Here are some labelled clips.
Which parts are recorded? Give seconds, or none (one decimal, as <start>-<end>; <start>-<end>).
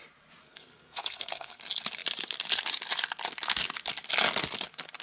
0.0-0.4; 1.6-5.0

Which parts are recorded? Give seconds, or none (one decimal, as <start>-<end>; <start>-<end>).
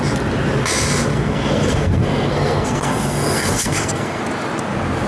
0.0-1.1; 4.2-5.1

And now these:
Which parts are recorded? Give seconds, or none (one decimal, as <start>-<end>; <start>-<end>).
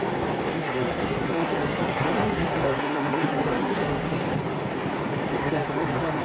0.0-0.5; 4.2-5.4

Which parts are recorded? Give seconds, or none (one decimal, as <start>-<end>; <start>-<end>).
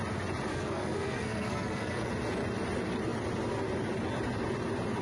0.0-0.5; 2.1-5.0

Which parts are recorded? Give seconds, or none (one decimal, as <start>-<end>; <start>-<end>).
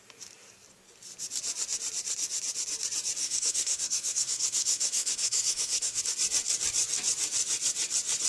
0.0-3.2; 6.0-8.3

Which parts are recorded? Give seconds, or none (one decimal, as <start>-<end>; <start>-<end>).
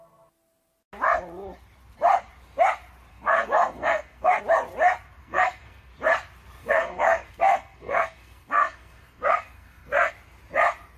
0.0-3.1; 4.4-5.2; 5.9-6.6; 10.1-11.0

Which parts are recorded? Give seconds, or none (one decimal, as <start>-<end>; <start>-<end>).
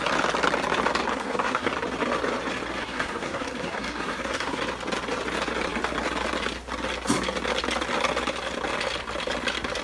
0.0-1.1; 1.7-2.8; 4.6-9.8